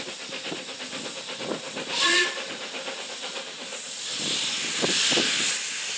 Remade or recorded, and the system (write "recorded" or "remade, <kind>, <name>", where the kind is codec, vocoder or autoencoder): recorded